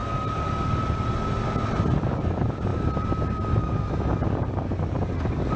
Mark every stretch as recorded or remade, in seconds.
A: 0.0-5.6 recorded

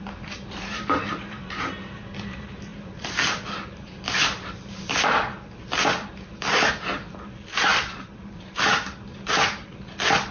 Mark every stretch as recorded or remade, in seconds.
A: 0.0-10.3 remade

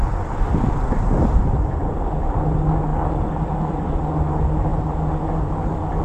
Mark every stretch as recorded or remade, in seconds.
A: 0.0-6.0 recorded

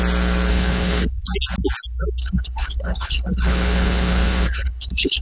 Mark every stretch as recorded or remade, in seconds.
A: 0.0-0.5 recorded; 0.5-1.1 remade; 1.1-2.2 recorded; 2.2-5.2 remade

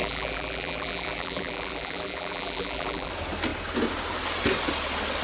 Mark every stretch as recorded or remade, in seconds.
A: 0.0-3.1 remade; 3.1-5.2 recorded

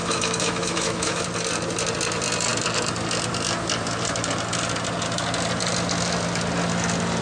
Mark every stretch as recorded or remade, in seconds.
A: 0.0-1.2 remade; 1.2-7.2 recorded

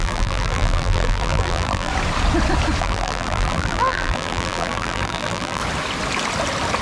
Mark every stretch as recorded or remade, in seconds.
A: 0.0-1.9 remade; 1.9-2.8 recorded; 2.8-5.6 remade; 5.6-6.8 recorded

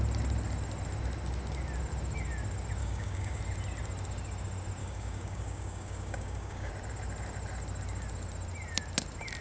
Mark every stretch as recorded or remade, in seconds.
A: 0.0-2.8 recorded; 2.8-3.4 remade; 3.4-4.8 recorded; 4.8-6.7 remade; 6.7-9.4 recorded